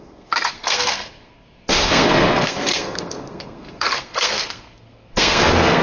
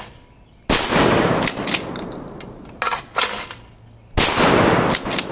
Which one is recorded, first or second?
second